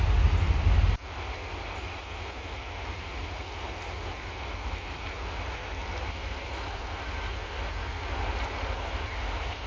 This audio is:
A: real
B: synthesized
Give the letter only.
A